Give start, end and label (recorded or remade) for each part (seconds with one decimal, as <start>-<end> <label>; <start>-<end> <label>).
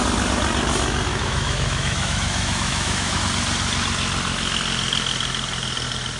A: 0.0-1.1 recorded; 1.1-3.2 remade; 3.2-6.2 recorded